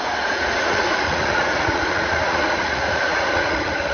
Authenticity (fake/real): fake